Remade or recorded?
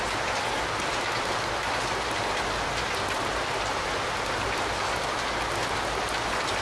recorded